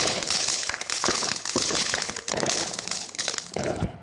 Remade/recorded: remade